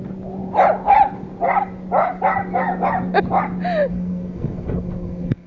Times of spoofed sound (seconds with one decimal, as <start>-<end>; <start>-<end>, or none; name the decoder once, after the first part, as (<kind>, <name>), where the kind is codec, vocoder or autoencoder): 3.9-5.5 (codec, SNAC)